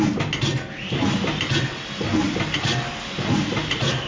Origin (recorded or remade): recorded